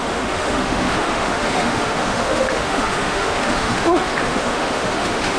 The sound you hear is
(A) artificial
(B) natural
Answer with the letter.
A